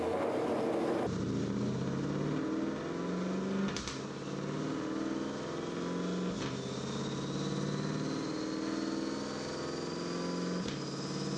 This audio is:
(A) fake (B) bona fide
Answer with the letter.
B